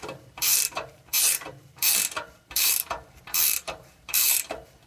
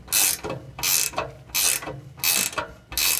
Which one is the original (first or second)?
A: second